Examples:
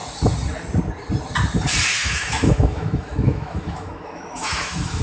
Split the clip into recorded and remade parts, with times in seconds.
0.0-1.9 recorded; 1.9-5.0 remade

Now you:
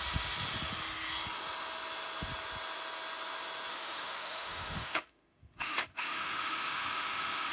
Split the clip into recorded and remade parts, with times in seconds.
0.0-3.7 recorded; 3.7-7.5 remade

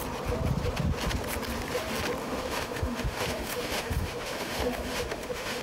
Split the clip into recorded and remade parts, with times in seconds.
0.0-2.2 recorded; 2.2-5.6 remade

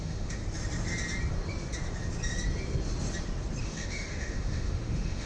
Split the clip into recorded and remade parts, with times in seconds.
0.0-0.4 remade; 0.4-3.6 recorded; 3.6-5.3 remade

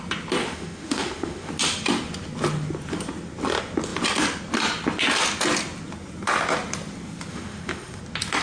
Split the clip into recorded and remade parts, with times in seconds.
0.0-0.4 recorded; 0.4-1.5 remade; 1.5-7.3 recorded; 7.3-8.0 remade; 8.0-8.4 recorded

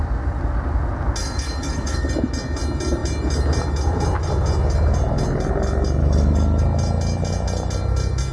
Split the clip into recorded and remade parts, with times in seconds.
0.0-1.2 recorded; 1.2-2.1 remade; 2.1-6.0 recorded; 6.0-6.6 remade; 6.6-8.3 recorded

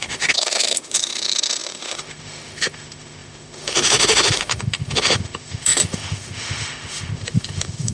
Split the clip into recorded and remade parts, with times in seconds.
0.0-7.9 remade